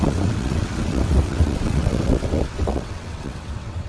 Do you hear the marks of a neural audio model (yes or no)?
yes